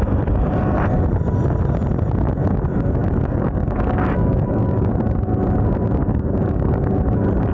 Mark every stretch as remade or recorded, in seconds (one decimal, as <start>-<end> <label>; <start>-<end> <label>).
0.0-3.0 recorded; 3.0-4.9 remade; 4.9-6.0 recorded; 6.0-6.7 remade; 6.7-7.5 recorded